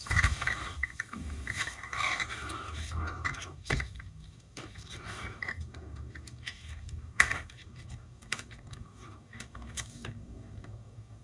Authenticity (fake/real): fake